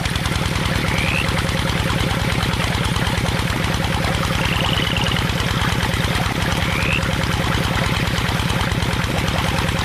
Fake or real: real